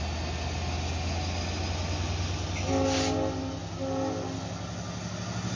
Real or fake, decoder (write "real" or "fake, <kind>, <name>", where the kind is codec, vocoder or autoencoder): real